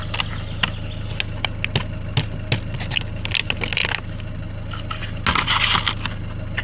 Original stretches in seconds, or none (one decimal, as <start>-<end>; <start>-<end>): 0.0-6.6